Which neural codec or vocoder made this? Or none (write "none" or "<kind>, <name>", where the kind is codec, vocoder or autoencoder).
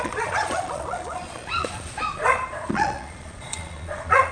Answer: vocoder, Vocos